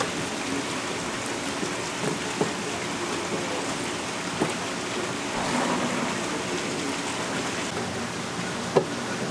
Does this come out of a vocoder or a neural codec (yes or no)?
no